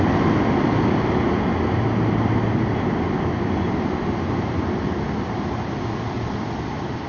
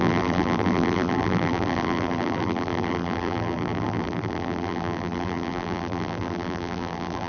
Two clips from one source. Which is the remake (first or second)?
second